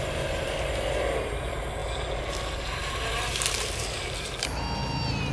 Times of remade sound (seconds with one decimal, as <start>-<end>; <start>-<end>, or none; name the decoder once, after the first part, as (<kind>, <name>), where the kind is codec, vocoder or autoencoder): none